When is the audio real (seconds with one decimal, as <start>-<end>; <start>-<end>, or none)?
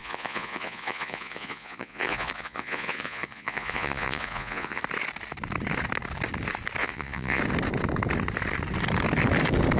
4.8-6.8; 7.4-9.8